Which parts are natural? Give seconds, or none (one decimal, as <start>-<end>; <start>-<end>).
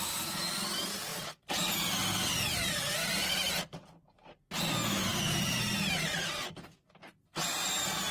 0.0-8.1